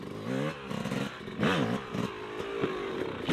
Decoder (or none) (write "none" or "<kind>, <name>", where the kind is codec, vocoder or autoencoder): none